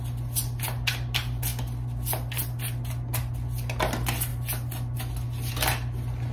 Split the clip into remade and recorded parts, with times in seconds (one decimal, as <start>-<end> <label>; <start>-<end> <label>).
0.0-6.3 recorded